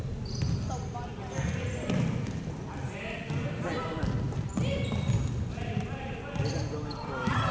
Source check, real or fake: real